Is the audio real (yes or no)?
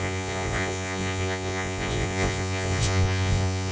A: no